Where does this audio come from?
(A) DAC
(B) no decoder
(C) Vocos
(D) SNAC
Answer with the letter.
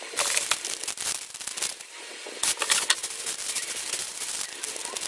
B